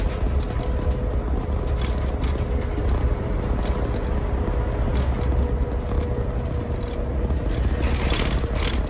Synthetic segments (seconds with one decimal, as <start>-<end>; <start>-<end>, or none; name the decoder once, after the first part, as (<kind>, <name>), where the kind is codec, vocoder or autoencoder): none